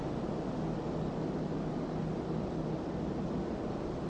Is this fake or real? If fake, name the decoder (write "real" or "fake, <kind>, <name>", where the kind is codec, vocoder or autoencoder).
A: real